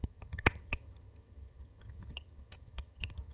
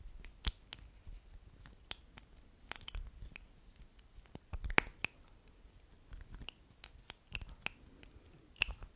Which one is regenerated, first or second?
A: first